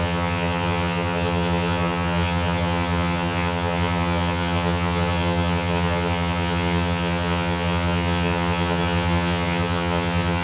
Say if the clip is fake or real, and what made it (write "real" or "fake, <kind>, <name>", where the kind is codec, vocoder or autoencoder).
fake, vocoder, HiFi-GAN